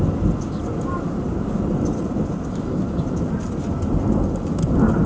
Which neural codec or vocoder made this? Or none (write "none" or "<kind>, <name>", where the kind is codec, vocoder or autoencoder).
none